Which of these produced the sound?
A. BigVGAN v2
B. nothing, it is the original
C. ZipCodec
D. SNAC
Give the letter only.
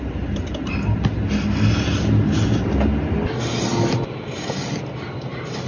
B